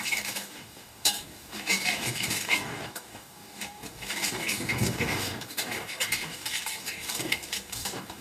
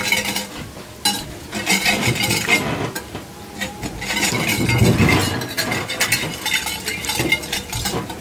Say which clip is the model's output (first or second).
first